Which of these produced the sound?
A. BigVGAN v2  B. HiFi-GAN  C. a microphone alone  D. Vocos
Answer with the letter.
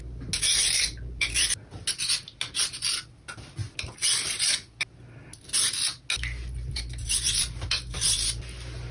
C